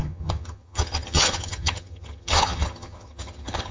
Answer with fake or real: fake